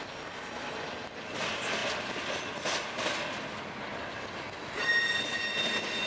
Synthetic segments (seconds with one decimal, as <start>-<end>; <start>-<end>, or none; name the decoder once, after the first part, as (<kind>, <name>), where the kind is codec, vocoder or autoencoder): none